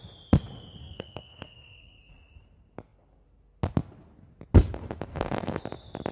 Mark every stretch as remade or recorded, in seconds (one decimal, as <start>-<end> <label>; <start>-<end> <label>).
0.0-0.8 recorded; 0.8-2.0 remade; 2.0-5.1 recorded; 5.1-5.6 remade; 5.6-6.1 recorded